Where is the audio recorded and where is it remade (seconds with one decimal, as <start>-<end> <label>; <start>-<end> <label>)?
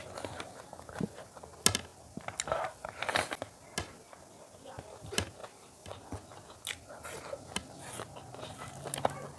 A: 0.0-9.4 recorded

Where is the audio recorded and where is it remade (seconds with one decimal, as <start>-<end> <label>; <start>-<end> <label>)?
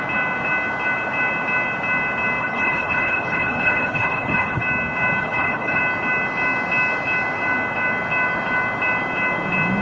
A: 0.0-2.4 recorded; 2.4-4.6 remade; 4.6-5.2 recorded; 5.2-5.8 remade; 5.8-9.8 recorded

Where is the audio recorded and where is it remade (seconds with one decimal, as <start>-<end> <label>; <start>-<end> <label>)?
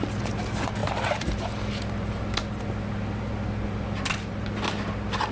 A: 0.0-5.3 recorded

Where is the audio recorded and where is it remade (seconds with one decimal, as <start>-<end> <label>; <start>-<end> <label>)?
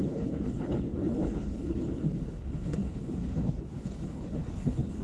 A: 0.0-5.0 remade